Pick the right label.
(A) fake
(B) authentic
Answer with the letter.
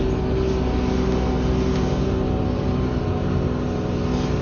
B